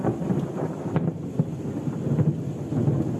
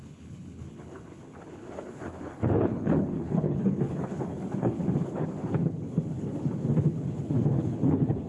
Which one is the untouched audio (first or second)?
first